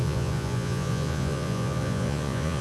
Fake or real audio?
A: fake